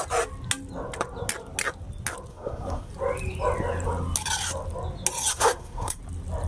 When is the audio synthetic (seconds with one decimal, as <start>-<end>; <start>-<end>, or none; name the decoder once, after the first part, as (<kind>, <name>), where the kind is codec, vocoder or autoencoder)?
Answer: 2.3-2.9 (codec, SNAC); 5.3-6.0

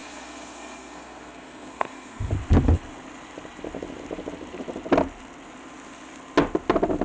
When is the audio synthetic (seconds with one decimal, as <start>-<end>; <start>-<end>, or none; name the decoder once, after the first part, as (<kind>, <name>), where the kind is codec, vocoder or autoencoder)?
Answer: 0.0-2.3 (codec, SNAC)

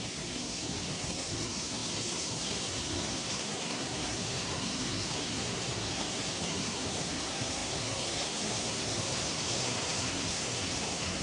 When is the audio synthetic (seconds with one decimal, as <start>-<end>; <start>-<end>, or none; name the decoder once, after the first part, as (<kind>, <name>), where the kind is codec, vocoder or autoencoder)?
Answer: 0.0-11.2 (codec, SNAC)

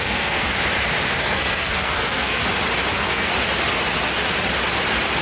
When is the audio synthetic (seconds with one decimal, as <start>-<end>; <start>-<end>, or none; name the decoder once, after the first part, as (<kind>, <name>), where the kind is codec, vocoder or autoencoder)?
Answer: 0.0-0.5 (codec, SNAC); 1.2-2.4; 2.9-3.3